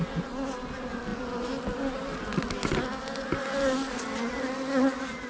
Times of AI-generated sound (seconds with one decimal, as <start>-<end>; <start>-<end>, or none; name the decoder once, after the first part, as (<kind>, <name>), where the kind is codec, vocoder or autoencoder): none